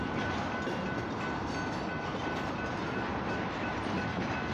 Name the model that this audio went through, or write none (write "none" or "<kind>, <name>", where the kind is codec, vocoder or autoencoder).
none